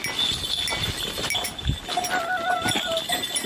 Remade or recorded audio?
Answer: recorded